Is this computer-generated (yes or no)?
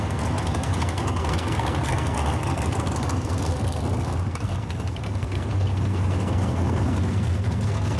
yes